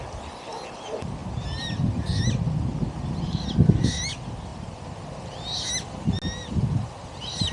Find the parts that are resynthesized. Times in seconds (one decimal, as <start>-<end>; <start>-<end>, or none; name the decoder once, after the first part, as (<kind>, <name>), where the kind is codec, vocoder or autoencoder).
none